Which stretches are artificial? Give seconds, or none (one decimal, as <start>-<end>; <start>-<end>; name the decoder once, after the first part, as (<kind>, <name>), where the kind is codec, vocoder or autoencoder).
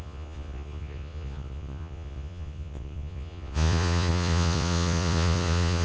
0.0-5.8 (vocoder, Vocos)